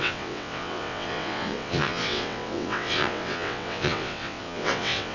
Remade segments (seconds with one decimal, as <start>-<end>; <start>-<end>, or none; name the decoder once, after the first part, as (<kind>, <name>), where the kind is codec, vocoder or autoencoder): 0.0-5.1 (vocoder, WaveNeXt)

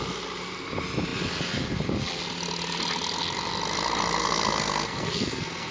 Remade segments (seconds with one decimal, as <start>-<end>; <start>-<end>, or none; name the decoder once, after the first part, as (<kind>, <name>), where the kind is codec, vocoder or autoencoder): 4.2-5.7 (codec, SNAC)

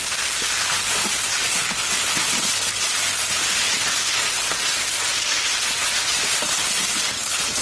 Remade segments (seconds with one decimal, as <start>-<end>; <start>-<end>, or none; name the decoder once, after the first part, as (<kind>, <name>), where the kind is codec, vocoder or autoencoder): none

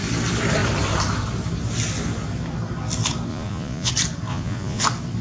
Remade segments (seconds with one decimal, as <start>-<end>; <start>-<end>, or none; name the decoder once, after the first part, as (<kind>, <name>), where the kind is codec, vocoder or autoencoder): 3.3-3.9 (vocoder, Vocos); 4.3-4.8